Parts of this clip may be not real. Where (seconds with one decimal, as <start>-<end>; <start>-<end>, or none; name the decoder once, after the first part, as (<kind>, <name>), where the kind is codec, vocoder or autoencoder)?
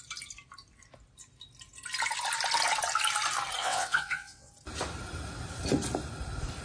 3.6-4.5 (vocoder, WaveNeXt)